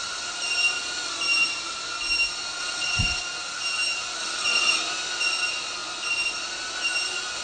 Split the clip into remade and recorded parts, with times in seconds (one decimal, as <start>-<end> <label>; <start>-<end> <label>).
0.0-2.6 recorded; 2.6-3.2 remade; 3.2-4.2 recorded; 4.2-4.8 remade; 4.8-7.4 recorded